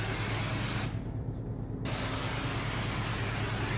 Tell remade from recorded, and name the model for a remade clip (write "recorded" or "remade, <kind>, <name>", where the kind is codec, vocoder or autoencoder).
recorded